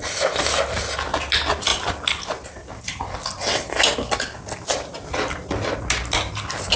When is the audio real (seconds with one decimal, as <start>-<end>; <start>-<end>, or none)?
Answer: 0.0-6.8